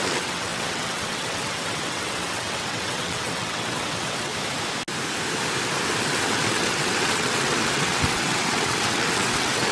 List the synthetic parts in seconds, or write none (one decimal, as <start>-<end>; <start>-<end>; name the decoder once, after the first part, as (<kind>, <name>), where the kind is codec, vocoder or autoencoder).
0.0-4.3 (vocoder, WaveNeXt); 6.0-9.7